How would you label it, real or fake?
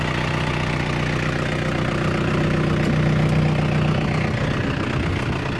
real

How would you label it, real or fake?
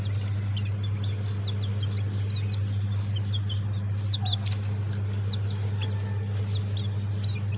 real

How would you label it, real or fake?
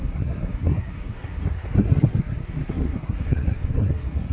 fake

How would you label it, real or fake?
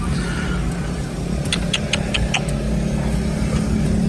real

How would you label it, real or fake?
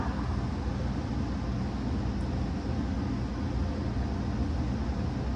real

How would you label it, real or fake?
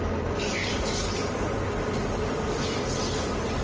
real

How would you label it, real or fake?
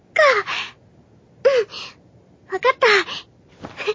real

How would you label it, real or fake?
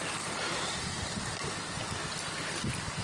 real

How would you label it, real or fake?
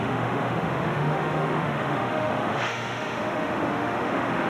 fake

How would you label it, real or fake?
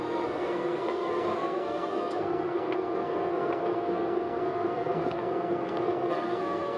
fake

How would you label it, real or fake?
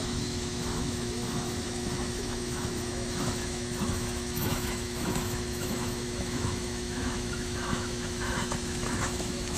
fake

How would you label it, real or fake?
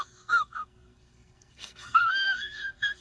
fake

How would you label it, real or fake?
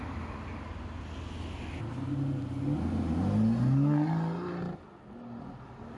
real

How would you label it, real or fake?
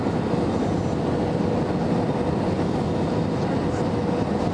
real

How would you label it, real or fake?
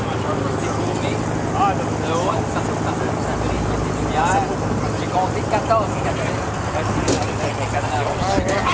real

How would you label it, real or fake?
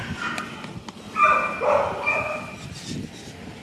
real